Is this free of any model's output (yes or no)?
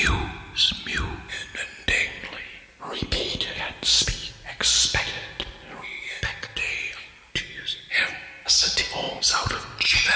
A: yes